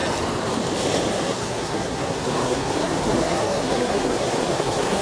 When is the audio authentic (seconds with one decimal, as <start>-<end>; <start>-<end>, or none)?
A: 0.0-1.1